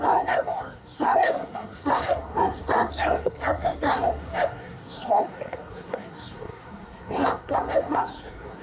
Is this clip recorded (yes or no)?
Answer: no